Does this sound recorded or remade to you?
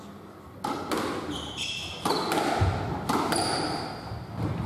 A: recorded